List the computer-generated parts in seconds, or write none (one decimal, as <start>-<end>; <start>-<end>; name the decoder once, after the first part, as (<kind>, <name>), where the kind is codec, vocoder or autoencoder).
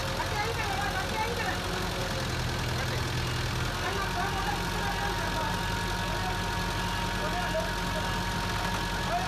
none